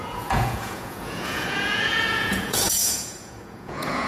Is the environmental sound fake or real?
fake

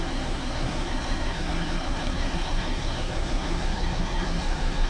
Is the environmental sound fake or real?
fake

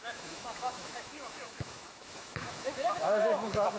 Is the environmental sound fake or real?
fake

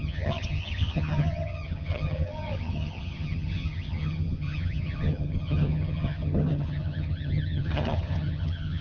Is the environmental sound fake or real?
fake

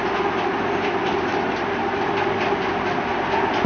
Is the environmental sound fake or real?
real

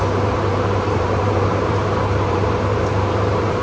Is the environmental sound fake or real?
fake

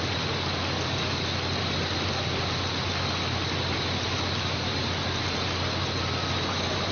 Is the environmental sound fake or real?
real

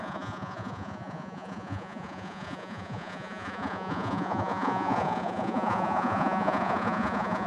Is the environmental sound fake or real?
fake